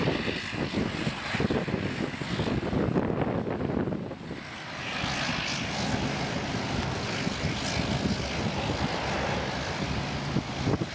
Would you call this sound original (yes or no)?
yes